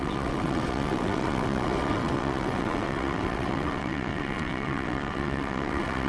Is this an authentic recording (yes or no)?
no